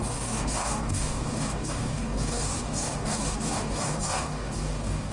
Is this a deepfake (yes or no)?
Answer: yes